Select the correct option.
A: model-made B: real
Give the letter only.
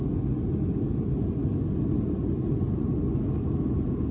B